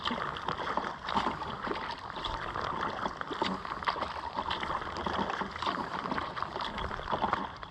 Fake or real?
real